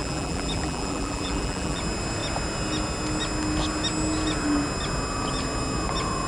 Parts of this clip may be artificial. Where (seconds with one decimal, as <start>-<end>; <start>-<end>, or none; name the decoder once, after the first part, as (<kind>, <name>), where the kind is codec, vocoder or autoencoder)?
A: 0.0-1.8 (vocoder, BigVGAN v2)